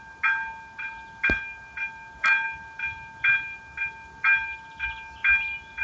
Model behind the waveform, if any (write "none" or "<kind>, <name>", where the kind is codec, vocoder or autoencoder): none